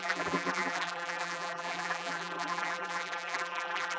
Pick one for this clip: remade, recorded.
remade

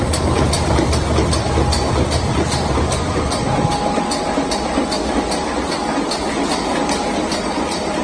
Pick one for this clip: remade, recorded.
recorded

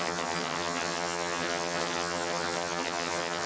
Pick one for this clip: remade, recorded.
remade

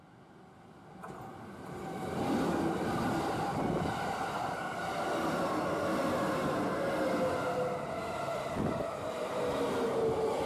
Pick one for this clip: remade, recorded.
recorded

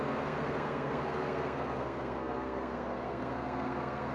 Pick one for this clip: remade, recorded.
remade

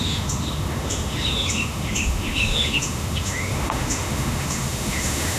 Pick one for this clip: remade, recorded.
remade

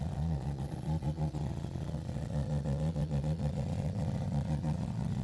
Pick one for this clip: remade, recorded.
remade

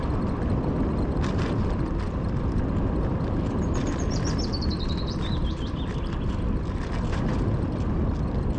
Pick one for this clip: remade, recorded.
remade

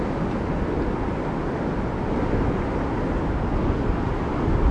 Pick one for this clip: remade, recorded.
recorded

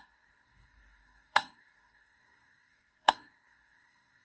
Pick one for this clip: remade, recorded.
remade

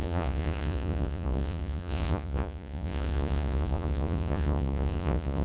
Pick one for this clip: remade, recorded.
remade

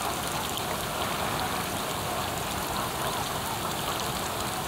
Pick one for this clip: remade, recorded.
recorded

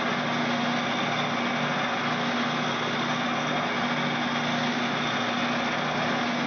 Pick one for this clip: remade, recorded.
recorded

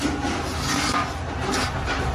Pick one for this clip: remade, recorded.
recorded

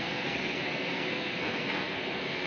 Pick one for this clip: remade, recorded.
remade